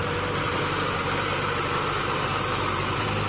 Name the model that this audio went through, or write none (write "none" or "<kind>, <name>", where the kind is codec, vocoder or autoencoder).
vocoder, BigVGAN v2